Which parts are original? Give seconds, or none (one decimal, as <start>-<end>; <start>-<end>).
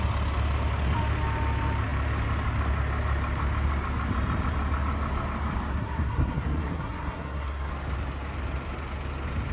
0.0-5.7; 7.7-9.5